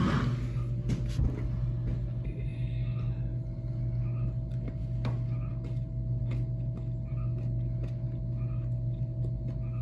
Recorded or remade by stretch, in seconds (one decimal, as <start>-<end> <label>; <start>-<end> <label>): 0.0-9.8 recorded